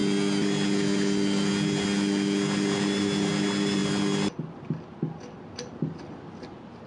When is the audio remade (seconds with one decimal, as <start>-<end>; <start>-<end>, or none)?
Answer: none